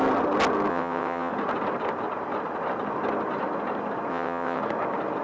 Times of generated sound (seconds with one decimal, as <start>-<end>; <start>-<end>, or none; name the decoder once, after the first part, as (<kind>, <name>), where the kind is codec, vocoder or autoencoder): 0.7-1.3 (vocoder, WaveNeXt); 4.1-4.6